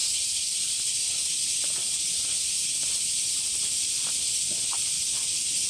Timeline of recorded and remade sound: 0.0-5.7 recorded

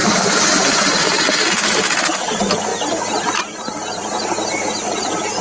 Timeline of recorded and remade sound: 0.0-5.4 recorded

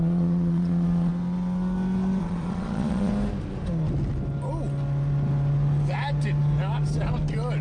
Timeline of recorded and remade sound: 0.0-1.1 remade; 1.1-2.2 recorded; 2.2-3.1 remade; 3.1-7.6 recorded

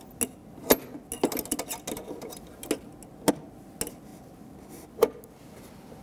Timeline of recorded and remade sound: 0.0-6.0 recorded

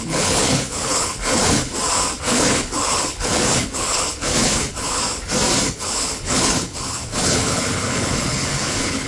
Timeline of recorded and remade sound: 0.0-1.7 remade; 1.7-2.3 recorded; 2.3-5.0 remade; 5.0-5.7 recorded; 5.7-9.1 remade